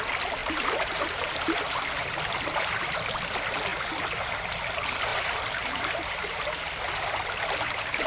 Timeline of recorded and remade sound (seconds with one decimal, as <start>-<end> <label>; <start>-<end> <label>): 0.0-0.4 recorded; 0.4-1.7 remade; 1.7-5.1 recorded; 5.1-6.6 remade; 6.6-8.1 recorded

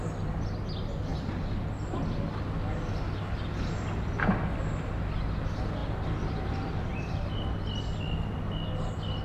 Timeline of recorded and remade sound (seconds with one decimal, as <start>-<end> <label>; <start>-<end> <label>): 0.0-1.1 recorded; 1.1-1.7 remade; 1.7-5.8 recorded; 5.8-7.3 remade; 7.3-9.2 recorded

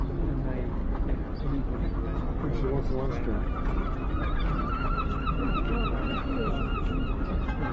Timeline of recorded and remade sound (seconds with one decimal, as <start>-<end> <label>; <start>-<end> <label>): 0.0-0.8 recorded; 0.8-1.4 remade; 1.4-7.7 recorded

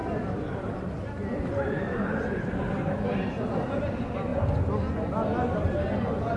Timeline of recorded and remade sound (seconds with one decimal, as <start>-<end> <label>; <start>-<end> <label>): 0.0-3.8 remade; 3.8-6.4 recorded

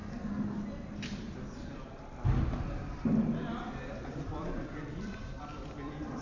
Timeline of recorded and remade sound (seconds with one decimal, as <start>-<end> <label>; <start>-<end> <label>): 0.0-3.7 recorded; 3.7-6.2 remade